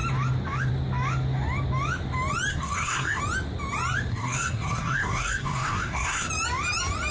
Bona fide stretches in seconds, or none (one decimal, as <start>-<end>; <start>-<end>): 0.0-2.5; 3.2-4.1; 6.3-7.1

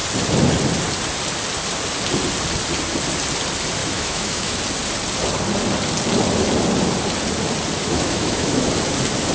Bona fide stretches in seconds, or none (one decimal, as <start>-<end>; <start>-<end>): 0.0-3.8; 4.6-7.8; 8.7-9.3

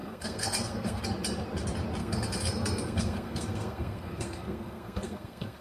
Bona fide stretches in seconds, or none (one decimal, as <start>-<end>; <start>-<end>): 1.0-2.0

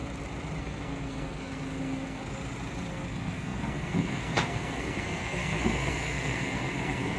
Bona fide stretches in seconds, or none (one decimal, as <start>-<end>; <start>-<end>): 0.0-0.6; 2.2-2.9

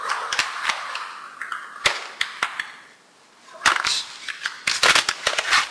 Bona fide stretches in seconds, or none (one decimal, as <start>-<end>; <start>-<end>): 0.0-5.7

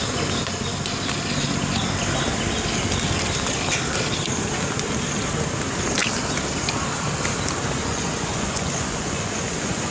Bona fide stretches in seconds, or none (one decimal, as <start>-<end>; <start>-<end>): 0.0-7.8

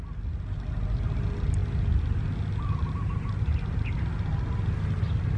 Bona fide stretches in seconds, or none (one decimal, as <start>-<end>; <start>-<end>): 0.0-5.4

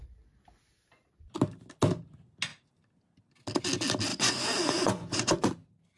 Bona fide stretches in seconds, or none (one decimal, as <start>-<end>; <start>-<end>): 0.0-4.1; 5.5-6.0